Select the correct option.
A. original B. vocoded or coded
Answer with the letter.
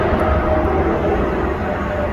A